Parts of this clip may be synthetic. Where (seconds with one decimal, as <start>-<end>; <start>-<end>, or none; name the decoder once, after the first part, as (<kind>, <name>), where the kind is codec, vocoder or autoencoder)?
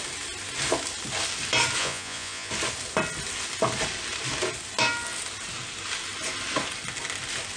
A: 1.8-2.5 (vocoder, Vocos)